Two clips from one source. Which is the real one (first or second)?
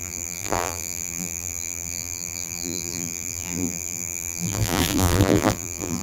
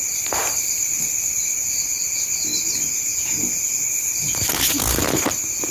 second